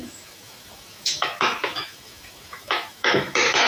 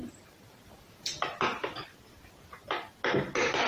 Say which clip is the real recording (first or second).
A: second